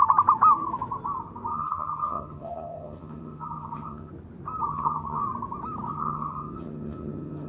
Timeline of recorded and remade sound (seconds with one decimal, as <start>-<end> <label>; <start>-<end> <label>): 0.0-1.5 recorded; 1.5-4.1 remade; 4.1-4.7 recorded; 4.7-5.2 remade; 5.2-5.9 recorded; 5.9-7.5 remade